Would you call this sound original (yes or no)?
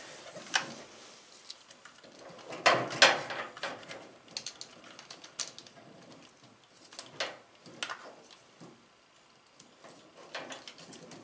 yes